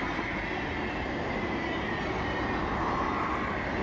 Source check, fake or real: real